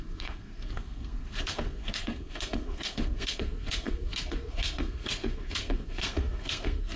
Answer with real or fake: fake